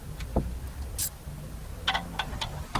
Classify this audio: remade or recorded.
recorded